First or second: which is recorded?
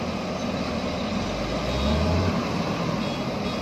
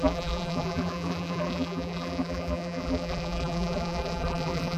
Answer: first